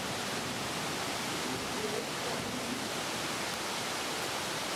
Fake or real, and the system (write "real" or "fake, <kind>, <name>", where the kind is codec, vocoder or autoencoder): real